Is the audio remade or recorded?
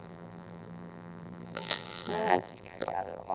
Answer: remade